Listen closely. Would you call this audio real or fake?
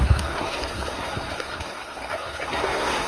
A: fake